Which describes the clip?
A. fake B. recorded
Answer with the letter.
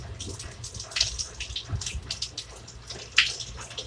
B